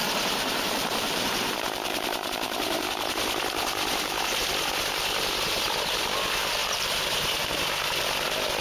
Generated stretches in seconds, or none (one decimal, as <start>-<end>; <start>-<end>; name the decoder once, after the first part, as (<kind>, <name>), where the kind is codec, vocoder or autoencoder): 0.0-4.2 (vocoder, BigVGAN v2); 6.6-7.5